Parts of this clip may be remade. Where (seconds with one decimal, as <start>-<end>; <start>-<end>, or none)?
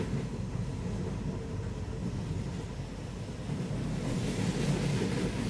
none